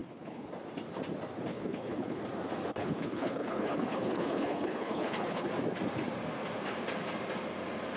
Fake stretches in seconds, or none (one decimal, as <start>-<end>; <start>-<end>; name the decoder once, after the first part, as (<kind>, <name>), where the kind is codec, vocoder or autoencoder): 0.0-0.5 (codec, HILCodec); 1.5-2.2; 2.7-5.5